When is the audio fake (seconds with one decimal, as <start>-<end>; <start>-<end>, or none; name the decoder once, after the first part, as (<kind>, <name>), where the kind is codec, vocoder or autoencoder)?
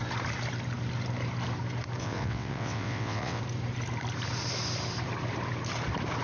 2.0-3.4 (vocoder, WaveNeXt)